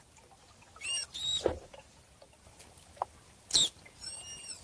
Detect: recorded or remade recorded